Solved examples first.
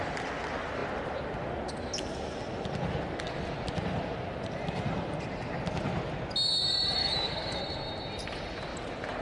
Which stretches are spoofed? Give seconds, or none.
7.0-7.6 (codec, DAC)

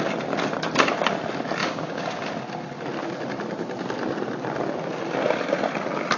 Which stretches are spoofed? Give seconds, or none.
1.6-2.3 (codec, DAC)